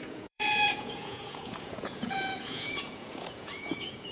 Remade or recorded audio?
remade